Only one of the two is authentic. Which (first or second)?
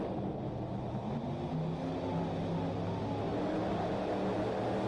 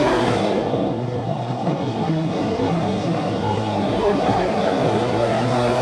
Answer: first